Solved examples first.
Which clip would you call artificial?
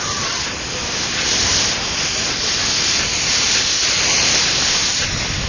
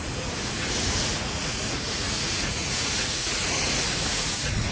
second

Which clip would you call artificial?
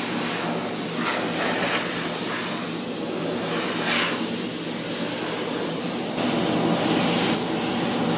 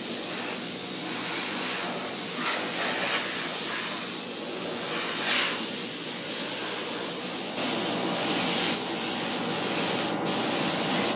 second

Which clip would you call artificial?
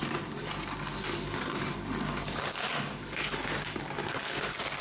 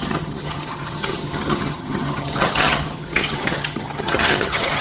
second